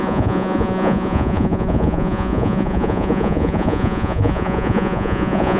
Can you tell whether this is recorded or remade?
remade